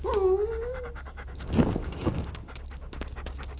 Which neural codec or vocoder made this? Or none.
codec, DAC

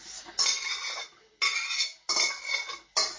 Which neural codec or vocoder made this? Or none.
none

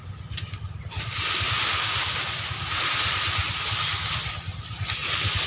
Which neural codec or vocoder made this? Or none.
none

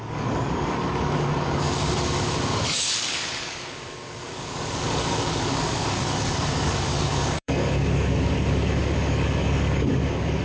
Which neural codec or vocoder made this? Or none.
codec, DAC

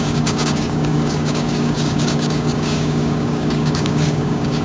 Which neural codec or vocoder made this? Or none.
codec, DAC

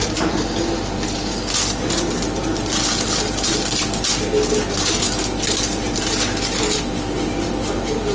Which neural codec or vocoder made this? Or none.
none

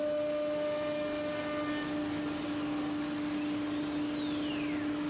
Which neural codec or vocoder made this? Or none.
none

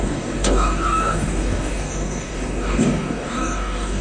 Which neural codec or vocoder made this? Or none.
codec, DAC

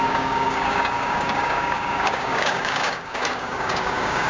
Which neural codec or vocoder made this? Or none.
codec, DAC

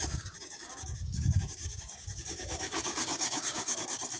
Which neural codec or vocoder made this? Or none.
codec, DAC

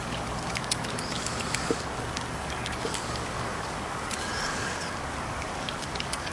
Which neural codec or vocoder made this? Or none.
codec, DAC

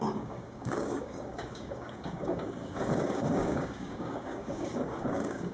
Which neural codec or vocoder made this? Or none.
codec, DAC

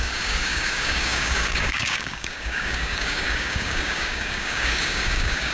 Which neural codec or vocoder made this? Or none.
codec, DAC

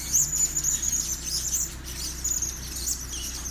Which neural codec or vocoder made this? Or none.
none